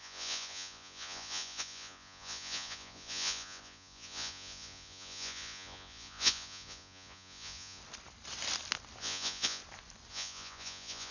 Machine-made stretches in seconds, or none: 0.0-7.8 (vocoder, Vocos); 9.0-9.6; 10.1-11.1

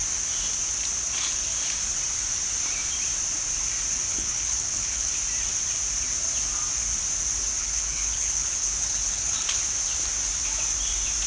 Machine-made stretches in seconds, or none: 4.1-5.1 (codec, HILCodec); 7.6-9.6

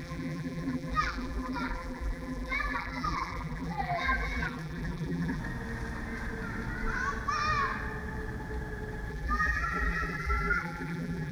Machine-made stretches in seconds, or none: 0.0-5.4 (vocoder, BigVGAN v2); 9.1-11.3

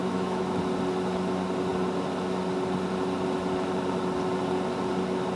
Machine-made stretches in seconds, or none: 0.0-0.6 (autoencoder, DAC-VAE)

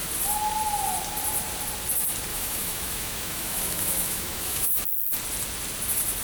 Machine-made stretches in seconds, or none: 2.3-5.1 (autoencoder, DAC-VAE)

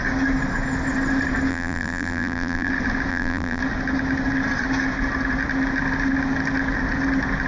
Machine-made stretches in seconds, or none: 1.5-2.7 (vocoder, BigVGAN v2); 3.1-3.6

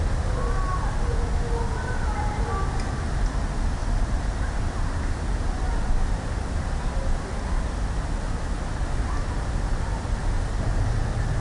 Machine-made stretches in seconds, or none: 3.8-4.6 (vocoder, BigVGAN v2)